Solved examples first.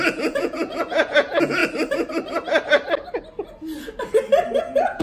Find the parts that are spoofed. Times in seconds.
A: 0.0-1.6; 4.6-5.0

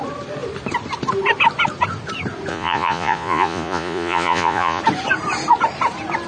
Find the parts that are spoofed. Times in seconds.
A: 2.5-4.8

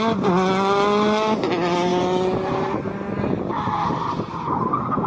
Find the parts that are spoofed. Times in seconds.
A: none

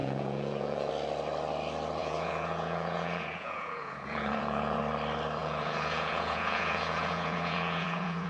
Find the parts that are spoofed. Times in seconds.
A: 0.0-0.9; 2.0-4.8; 5.4-8.3

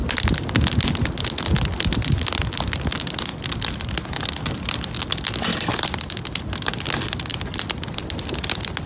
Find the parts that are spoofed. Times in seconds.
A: none